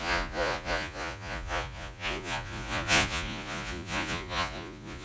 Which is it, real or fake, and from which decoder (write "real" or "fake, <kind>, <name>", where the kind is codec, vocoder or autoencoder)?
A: fake, vocoder, Vocos